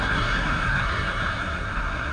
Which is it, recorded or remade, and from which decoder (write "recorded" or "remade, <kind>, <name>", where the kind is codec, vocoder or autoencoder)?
remade, codec, SNAC